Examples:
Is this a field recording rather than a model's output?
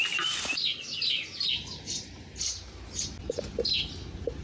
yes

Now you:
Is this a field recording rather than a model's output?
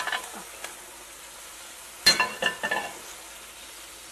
yes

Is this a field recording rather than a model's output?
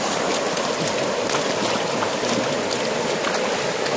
yes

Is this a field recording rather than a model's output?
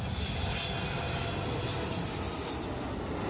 yes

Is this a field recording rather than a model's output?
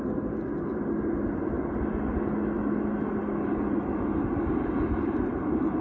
yes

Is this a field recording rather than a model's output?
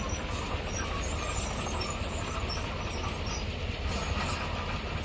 yes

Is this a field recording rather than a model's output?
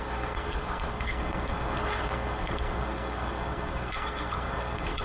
no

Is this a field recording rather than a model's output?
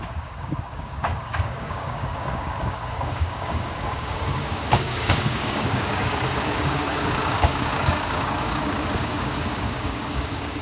no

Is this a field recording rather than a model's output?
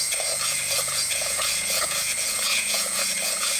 no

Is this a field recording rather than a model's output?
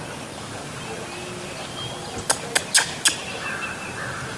yes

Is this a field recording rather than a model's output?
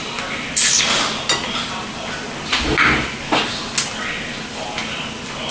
yes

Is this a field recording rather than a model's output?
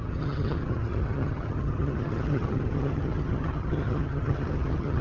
no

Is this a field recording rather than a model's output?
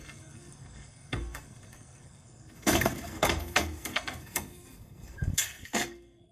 no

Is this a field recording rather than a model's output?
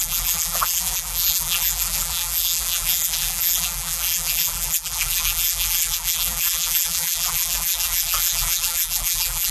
no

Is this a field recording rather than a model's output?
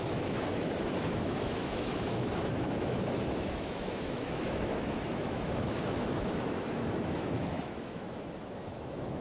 no